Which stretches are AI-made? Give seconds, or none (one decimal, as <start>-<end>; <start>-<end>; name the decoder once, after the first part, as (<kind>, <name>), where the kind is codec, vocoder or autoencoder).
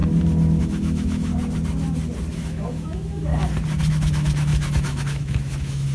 0.6-1.3 (autoencoder, DAC-VAE); 2.3-3.3; 3.9-5.9